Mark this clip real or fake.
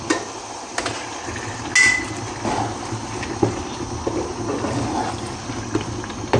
real